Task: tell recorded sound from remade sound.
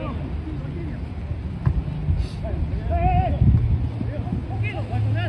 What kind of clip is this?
recorded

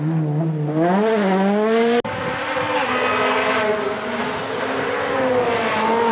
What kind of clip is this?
recorded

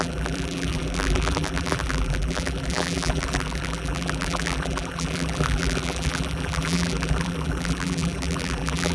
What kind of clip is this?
remade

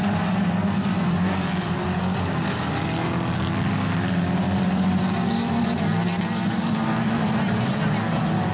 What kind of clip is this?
recorded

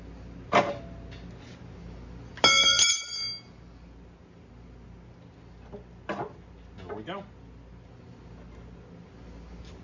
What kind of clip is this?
recorded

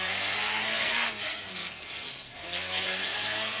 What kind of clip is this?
remade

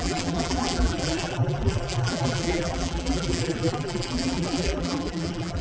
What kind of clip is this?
remade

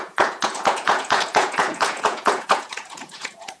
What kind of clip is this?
remade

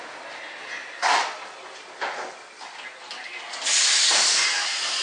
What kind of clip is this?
recorded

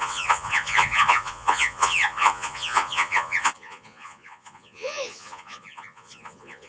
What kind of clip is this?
remade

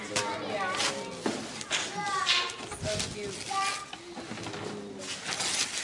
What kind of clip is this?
recorded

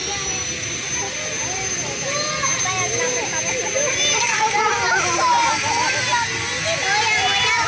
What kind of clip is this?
recorded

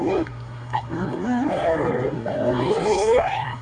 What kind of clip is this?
remade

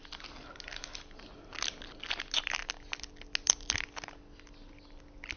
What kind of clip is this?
recorded